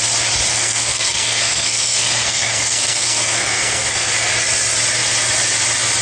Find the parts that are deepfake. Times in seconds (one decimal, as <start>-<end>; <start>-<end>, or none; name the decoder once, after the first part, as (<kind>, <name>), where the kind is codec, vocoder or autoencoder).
0.5-4.1 (codec, SNAC)